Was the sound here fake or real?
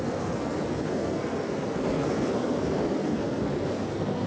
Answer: fake